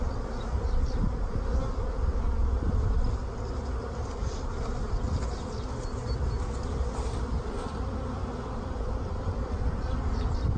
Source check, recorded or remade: recorded